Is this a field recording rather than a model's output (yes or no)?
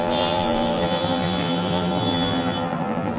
no